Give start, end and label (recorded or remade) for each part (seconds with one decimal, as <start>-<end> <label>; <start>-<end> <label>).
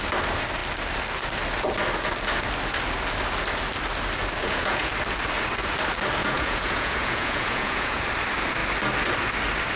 0.0-4.4 recorded; 4.4-4.9 remade; 4.9-6.2 recorded; 6.2-8.0 remade; 8.0-9.8 recorded